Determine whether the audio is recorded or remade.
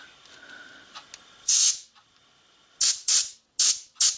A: recorded